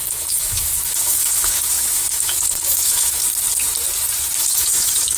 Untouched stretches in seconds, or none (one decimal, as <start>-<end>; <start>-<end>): 3.2-4.4